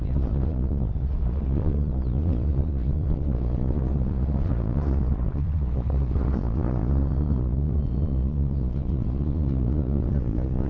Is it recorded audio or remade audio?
remade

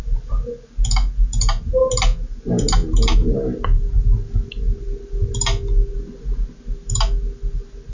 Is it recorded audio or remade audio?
recorded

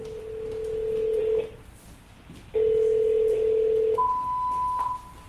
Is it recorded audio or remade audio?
recorded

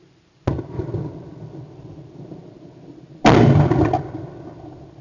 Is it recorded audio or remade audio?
recorded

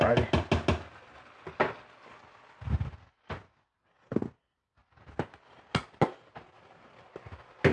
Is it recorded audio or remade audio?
recorded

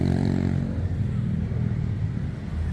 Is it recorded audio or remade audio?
remade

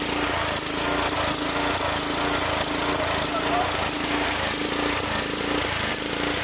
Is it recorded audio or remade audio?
recorded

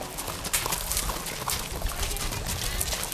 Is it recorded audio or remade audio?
recorded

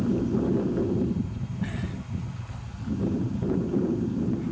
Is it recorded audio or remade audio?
recorded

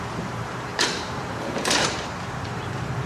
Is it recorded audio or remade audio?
remade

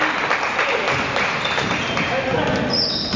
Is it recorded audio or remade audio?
recorded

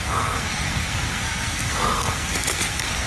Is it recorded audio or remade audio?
remade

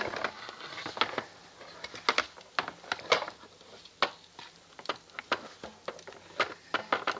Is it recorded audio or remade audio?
recorded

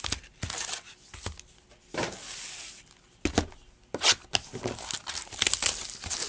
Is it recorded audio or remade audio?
recorded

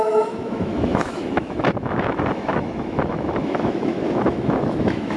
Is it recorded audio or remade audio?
remade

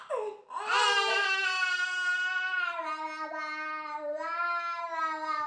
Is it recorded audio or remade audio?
recorded